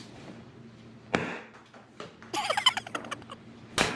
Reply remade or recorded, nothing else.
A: recorded